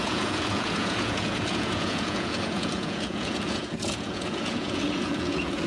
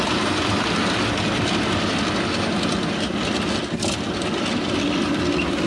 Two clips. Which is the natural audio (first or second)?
second